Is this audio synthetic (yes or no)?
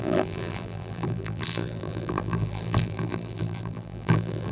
yes